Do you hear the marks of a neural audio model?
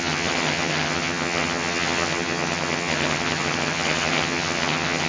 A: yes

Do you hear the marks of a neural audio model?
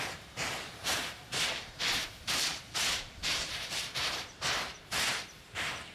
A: yes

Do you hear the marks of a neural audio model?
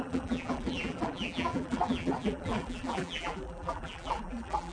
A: yes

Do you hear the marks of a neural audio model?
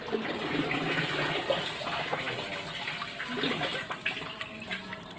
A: no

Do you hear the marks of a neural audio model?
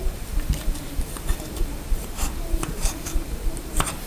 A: yes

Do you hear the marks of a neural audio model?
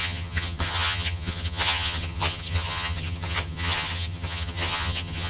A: yes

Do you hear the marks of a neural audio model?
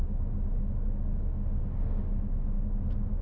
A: no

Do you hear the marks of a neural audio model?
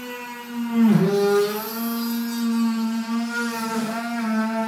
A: no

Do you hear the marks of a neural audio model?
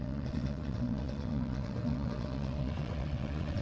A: yes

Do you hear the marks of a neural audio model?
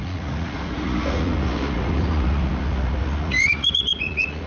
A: yes